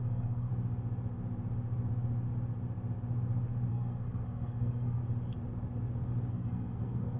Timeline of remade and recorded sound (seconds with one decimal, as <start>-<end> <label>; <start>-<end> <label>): 0.0-0.5 remade; 0.5-3.7 recorded; 3.7-5.0 remade; 5.0-6.3 recorded; 6.3-7.2 remade